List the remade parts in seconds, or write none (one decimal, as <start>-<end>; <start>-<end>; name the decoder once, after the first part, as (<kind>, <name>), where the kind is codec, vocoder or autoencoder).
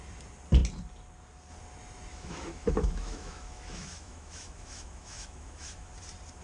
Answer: 2.1-5.9 (autoencoder, DAC-VAE)